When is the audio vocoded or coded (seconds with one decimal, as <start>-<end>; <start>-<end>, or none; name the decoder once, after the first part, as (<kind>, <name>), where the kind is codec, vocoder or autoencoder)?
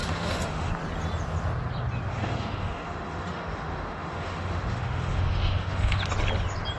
0.0-0.7 (autoencoder, DAC-VAE); 2.1-6.0